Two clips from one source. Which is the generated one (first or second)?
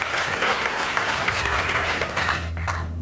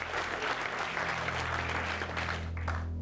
first